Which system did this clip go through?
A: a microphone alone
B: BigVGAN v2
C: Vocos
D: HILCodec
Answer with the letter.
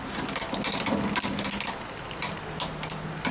A